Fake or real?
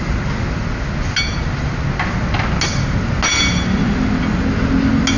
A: real